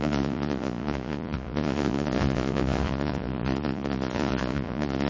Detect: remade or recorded remade